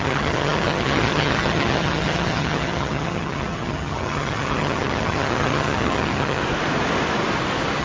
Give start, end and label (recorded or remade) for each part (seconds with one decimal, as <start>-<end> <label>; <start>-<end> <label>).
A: 0.0-6.4 remade; 6.4-7.8 recorded